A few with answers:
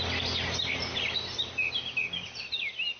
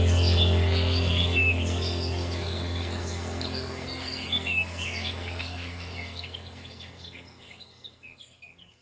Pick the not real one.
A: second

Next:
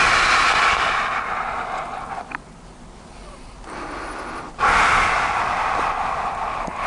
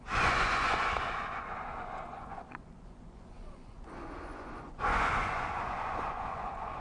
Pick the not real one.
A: second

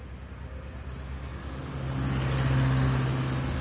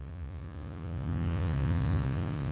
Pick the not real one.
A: second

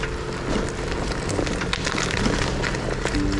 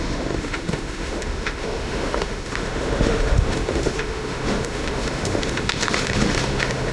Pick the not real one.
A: second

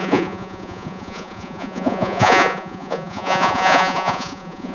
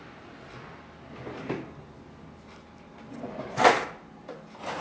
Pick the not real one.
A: first